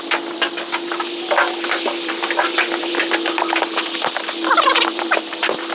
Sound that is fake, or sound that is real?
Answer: fake